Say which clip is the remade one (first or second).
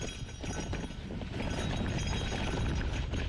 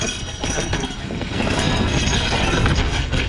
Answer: second